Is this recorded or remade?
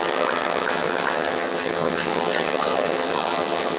remade